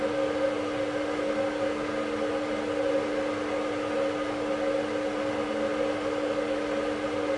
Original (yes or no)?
yes